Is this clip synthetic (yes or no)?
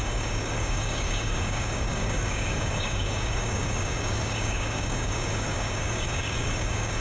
yes